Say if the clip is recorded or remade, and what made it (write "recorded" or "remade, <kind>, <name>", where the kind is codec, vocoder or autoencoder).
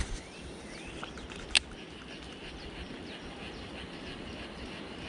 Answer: recorded